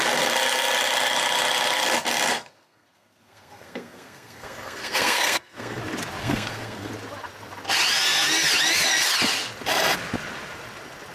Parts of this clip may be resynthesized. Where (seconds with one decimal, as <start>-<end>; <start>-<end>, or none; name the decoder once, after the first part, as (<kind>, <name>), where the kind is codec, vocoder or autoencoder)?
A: 2.3-5.8 (codec, SNAC); 6.2-6.9

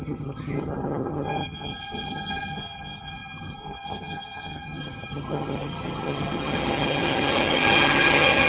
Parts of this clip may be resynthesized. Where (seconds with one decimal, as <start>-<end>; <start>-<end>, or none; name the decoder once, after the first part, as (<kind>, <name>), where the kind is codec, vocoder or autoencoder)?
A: 0.0-8.5 (vocoder, HiFi-GAN)

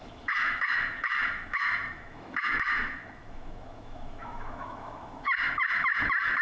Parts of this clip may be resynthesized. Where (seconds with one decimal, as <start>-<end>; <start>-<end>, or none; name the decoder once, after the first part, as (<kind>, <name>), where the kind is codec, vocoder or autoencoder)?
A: 0.0-6.4 (autoencoder, DAC-VAE)

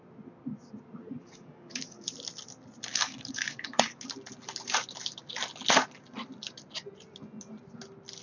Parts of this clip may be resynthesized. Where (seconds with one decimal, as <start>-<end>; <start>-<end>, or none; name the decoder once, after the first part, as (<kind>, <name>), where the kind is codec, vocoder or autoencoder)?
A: 1.2-2.1 (codec, DAC); 2.9-4.0

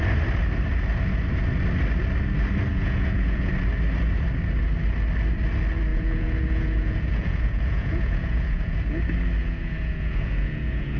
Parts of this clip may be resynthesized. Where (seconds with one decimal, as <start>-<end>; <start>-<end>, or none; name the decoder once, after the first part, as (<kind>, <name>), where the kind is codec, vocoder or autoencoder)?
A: 2.7-3.5 (vocoder, Vocos); 5.9-9.0; 9.4-11.0

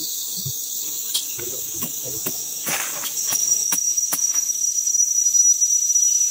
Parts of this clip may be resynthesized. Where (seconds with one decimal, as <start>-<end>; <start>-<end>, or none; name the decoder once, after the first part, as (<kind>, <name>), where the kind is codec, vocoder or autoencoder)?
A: 0.0-5.2 (codec, DAC)

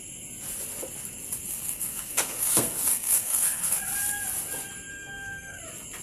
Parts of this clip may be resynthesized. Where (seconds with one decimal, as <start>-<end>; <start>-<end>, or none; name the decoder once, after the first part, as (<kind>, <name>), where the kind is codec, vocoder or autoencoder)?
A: 1.5-3.8 (codec, SNAC); 4.9-5.6

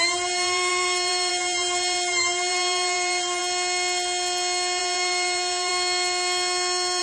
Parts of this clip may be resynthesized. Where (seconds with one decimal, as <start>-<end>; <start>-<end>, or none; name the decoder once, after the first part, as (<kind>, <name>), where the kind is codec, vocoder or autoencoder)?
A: 0.0-3.4 (vocoder, BigVGAN v2); 4.8-5.7